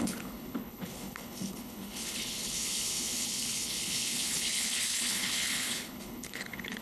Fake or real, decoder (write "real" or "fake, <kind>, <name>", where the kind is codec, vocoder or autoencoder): fake, codec, HILCodec